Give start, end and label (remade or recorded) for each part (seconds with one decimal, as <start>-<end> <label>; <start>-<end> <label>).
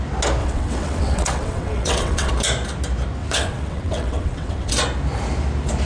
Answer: 0.0-0.4 recorded; 0.4-2.3 remade; 2.3-3.2 recorded; 3.2-4.7 remade; 4.7-5.8 recorded